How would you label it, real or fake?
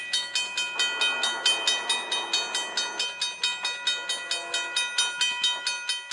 real